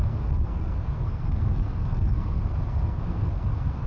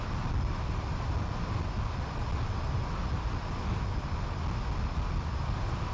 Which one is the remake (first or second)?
first